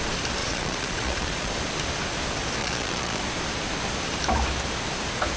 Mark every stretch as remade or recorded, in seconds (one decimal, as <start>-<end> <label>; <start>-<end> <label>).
0.0-0.4 recorded; 0.4-1.5 remade; 1.5-2.6 recorded; 2.6-3.2 remade; 3.2-5.4 recorded

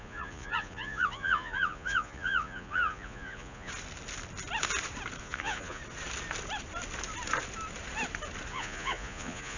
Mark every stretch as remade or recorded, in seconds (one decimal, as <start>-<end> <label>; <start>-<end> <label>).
0.0-3.7 remade; 3.7-5.2 recorded; 5.2-5.8 remade; 5.8-8.5 recorded; 8.5-9.6 remade

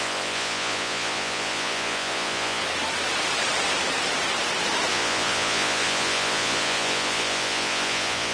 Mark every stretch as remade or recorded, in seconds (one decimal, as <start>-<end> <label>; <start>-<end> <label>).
0.0-2.6 remade; 2.6-4.9 recorded; 4.9-8.3 remade